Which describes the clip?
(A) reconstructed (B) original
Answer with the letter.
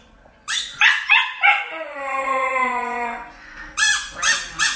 A